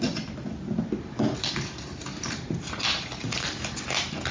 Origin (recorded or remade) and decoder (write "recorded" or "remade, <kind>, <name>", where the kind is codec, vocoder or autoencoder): recorded